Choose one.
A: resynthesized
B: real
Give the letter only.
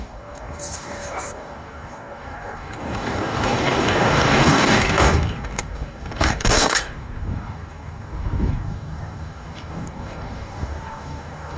A